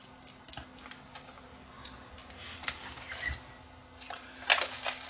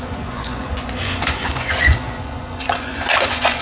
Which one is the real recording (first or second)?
first